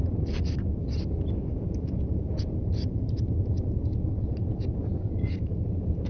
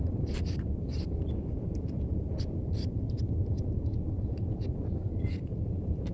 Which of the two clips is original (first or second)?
first